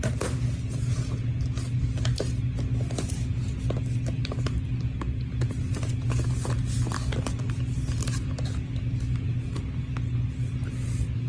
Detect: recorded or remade recorded